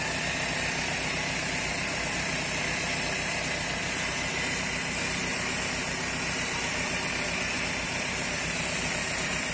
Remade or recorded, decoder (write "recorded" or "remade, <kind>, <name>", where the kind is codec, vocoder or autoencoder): recorded